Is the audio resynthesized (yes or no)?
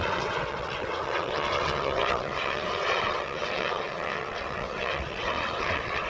yes